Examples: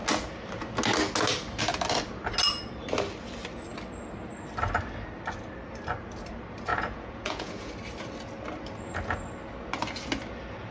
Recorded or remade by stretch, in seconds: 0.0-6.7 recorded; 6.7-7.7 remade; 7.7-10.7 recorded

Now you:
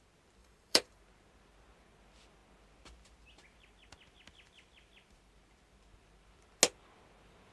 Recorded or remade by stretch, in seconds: 0.0-0.4 recorded; 0.4-1.0 remade; 1.0-7.5 recorded

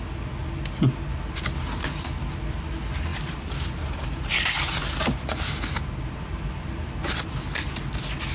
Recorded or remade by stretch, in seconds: 0.0-3.1 recorded; 3.1-7.9 remade; 7.9-8.3 recorded

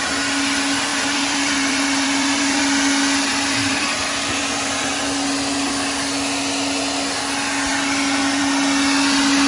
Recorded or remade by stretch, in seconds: 0.0-0.9 recorded; 0.9-2.6 remade; 2.6-3.3 recorded; 3.3-5.0 remade; 5.0-9.5 recorded

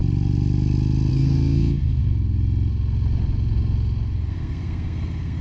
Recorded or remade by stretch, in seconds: 0.0-1.1 recorded; 1.1-2.0 remade; 2.0-4.3 recorded; 4.3-5.4 remade

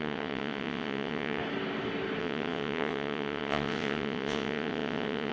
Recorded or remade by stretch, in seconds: 0.0-1.4 remade; 1.4-2.2 recorded; 2.2-5.3 remade

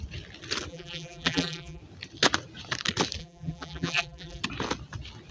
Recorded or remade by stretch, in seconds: 0.0-0.7 recorded; 0.7-1.8 remade; 1.8-3.2 recorded; 3.2-4.4 remade; 4.4-5.3 recorded

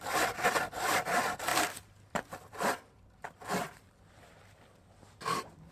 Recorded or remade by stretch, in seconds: 0.0-1.5 recorded; 1.5-4.9 remade; 4.9-5.7 recorded